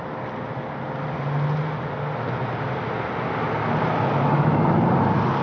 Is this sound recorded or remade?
recorded